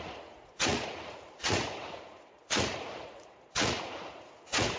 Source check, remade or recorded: remade